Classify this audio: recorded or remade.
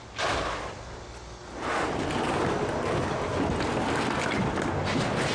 recorded